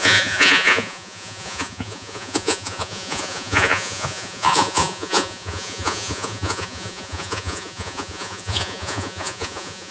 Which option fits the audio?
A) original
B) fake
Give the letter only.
B